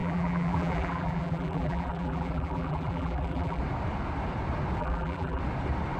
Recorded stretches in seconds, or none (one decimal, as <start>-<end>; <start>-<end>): 3.6-4.8; 5.4-6.0